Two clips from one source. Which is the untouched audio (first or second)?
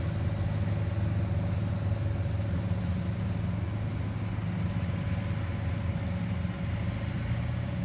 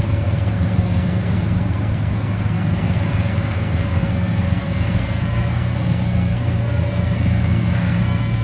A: first